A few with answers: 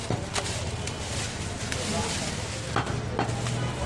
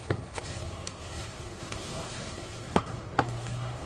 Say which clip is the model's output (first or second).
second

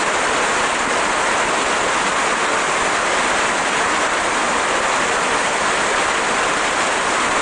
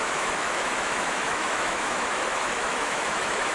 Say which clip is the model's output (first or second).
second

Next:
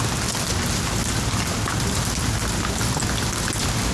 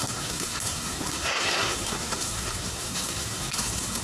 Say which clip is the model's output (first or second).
second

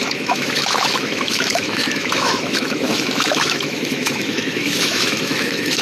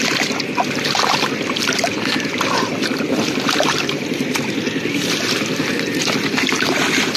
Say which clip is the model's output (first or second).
first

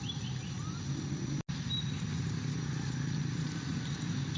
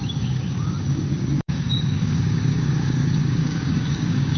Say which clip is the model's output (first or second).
second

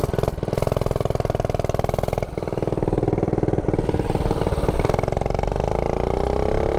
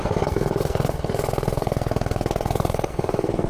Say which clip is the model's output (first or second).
second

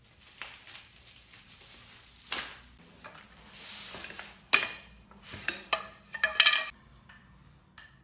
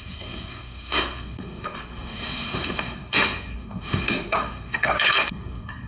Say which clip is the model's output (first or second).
second